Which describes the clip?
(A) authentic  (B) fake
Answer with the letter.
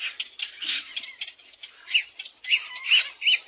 A